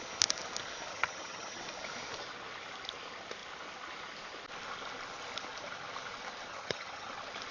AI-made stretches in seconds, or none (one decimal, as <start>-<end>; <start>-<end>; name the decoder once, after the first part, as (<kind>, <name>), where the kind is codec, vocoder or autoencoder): 0.9-1.6 (vocoder, HiFi-GAN); 6.5-7.1